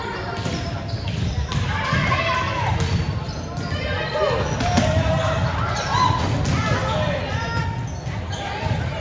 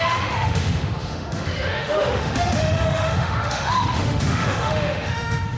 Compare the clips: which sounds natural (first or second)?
first